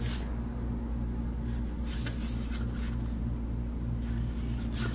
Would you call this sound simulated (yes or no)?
no